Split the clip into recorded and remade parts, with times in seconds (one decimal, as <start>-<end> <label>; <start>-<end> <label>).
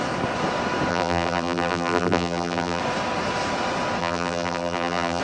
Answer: 0.0-0.9 recorded; 0.9-2.8 remade; 2.8-4.0 recorded; 4.0-5.2 remade